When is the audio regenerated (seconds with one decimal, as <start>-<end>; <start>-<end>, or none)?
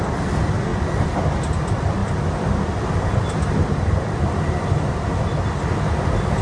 none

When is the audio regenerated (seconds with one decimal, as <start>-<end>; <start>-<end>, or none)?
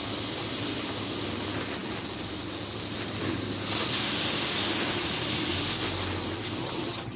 6.6-7.2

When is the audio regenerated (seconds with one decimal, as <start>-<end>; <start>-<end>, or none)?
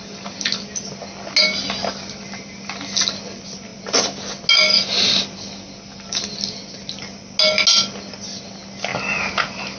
none